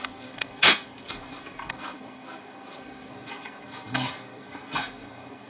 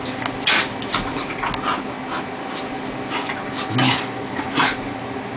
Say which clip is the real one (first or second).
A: second